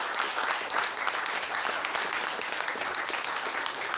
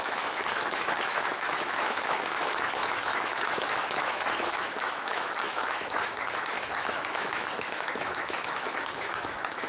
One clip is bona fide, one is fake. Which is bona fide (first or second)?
first